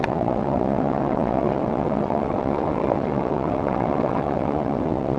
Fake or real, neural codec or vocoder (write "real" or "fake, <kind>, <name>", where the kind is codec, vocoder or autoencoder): fake, vocoder, WaveNeXt